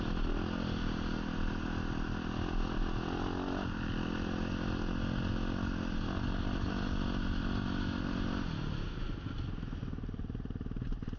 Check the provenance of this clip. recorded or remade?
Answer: recorded